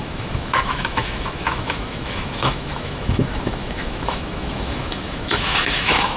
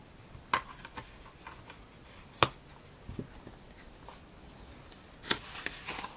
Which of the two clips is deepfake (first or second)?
first